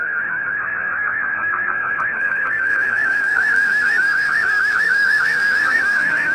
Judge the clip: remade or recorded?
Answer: remade